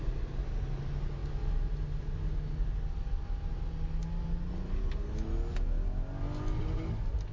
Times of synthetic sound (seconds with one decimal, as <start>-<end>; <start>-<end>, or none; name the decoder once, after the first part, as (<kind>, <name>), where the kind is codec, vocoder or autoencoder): none